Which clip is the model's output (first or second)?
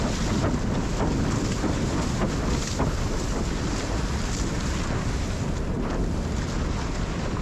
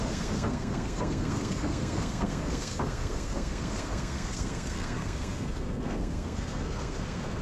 second